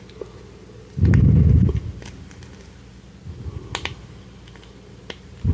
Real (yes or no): yes